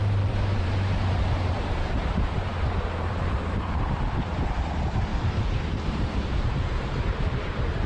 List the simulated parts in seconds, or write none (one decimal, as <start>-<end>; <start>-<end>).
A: 0.0-2.5; 3.1-5.1; 5.9-7.9